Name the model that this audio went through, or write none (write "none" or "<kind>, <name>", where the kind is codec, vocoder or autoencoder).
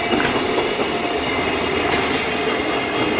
none